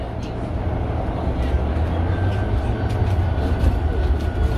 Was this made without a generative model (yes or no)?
yes